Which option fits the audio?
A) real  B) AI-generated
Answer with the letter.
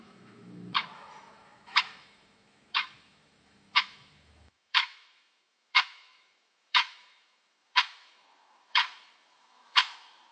B